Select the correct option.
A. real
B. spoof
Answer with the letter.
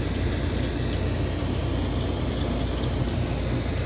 A